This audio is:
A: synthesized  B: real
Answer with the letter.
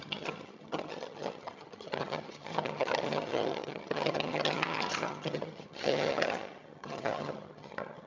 A